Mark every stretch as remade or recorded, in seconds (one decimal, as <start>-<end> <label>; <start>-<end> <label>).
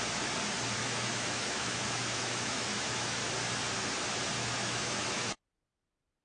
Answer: 0.0-0.8 recorded; 0.8-3.2 remade; 3.2-4.4 recorded; 4.4-5.2 remade; 5.2-6.2 recorded